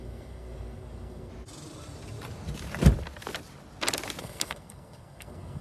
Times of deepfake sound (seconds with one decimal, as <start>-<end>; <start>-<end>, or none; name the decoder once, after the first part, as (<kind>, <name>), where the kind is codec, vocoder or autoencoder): 0.0-1.3 (codec, SNAC); 4.2-5.6